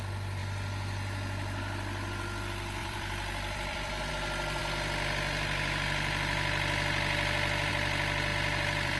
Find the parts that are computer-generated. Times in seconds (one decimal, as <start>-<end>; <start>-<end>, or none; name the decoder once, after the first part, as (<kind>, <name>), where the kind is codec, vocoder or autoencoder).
2.8-4.1 (vocoder, BigVGAN v2); 8.3-9.0

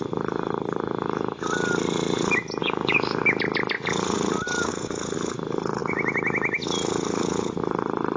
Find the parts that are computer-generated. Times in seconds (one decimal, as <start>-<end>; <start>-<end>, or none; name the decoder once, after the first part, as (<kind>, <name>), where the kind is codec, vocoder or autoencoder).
2.6-3.2 (codec, DAC)

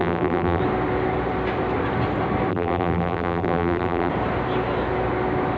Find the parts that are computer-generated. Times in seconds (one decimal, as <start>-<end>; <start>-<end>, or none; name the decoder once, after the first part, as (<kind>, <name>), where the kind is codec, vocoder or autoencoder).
0.0-0.6 (vocoder, BigVGAN v2); 2.5-4.1

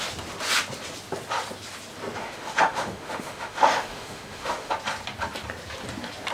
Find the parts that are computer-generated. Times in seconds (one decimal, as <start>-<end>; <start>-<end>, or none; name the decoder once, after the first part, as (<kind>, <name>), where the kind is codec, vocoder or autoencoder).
2.2-4.7 (autoencoder, DAC-VAE)

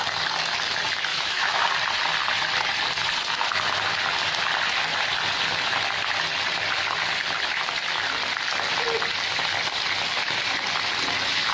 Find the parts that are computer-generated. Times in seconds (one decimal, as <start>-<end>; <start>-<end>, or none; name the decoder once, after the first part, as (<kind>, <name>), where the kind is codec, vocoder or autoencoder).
1.1-1.6 (autoencoder, DAC-VAE)

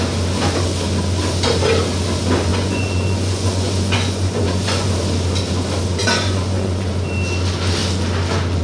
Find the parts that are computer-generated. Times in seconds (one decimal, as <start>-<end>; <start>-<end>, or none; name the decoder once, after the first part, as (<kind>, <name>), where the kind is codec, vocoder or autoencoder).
2.5-4.9 (vocoder, Vocos); 6.0-6.9